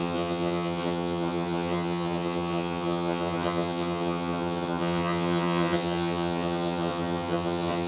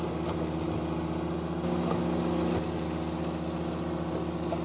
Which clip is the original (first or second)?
second